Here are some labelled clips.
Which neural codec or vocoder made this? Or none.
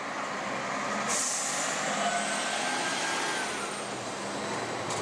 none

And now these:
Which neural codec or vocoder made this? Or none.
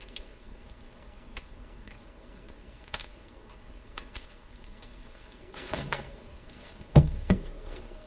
codec, SNAC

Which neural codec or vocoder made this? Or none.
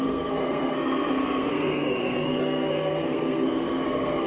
codec, SNAC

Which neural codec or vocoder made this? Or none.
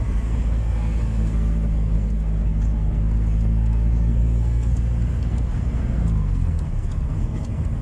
codec, SNAC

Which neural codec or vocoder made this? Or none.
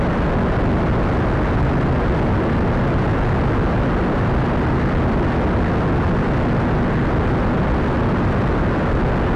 none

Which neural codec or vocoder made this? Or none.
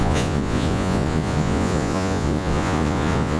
vocoder, Vocos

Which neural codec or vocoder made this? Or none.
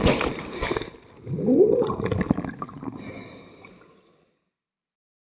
none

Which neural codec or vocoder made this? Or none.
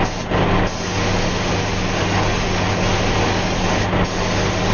none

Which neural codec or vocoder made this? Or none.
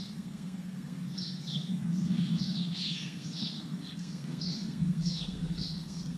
codec, SNAC